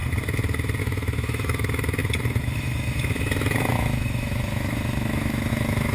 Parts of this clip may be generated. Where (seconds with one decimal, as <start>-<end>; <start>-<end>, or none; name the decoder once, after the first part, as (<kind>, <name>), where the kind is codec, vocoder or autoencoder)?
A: 0.8-5.9 (autoencoder, DAC-VAE)